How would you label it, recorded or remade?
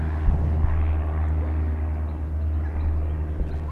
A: recorded